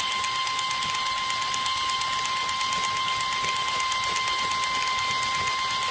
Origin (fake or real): real